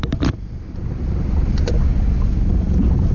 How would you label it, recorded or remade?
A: remade